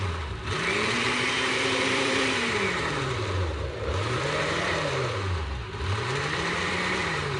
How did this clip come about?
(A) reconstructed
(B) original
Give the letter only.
A